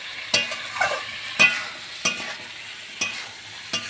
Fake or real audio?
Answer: real